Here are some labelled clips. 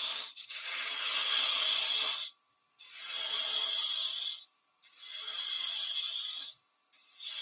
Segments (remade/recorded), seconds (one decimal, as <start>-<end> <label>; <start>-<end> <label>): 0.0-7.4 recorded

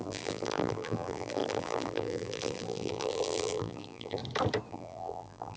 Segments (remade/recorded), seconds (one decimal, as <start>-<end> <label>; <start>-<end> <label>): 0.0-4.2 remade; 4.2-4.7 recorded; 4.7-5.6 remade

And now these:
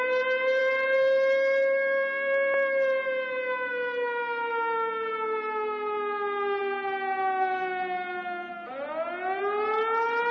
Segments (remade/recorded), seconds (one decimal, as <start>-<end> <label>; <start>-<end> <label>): 0.0-10.3 recorded